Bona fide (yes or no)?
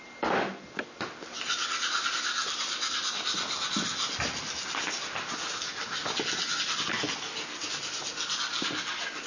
yes